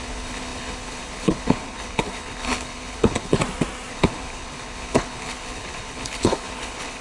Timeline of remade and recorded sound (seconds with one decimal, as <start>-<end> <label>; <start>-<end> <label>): 0.0-3.4 remade; 3.4-3.9 recorded; 3.9-7.0 remade